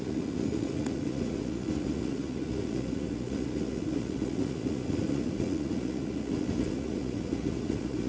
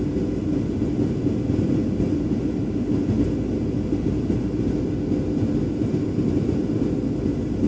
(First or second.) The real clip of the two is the second